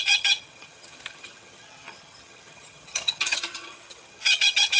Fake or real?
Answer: fake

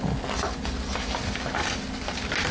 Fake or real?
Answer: real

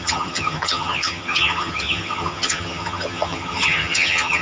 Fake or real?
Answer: fake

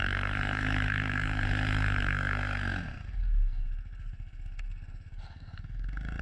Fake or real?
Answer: fake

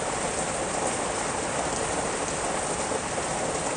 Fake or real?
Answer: real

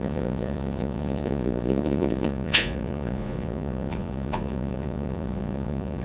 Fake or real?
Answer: fake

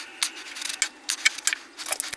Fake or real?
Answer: real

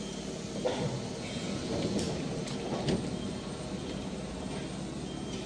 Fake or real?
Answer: real